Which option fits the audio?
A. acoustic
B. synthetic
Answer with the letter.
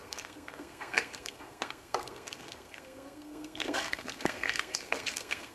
B